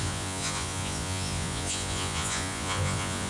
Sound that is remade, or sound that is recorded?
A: remade